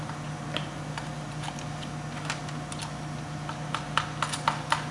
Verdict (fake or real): real